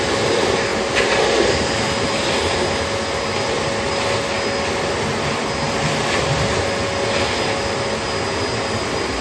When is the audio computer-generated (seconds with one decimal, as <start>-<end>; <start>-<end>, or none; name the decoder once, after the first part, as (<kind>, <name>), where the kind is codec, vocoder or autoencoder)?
none